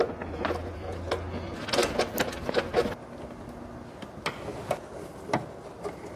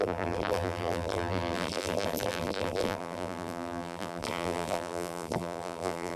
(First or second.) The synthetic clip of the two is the second